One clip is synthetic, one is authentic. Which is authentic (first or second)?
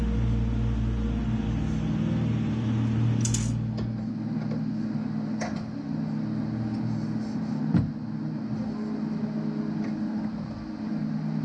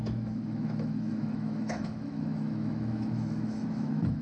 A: first